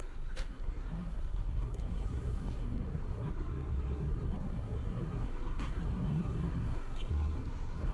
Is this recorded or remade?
remade